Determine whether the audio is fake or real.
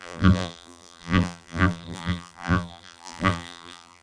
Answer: fake